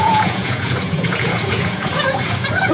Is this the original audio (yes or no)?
no